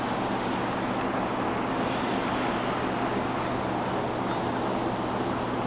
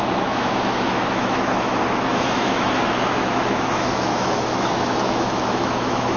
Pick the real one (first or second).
first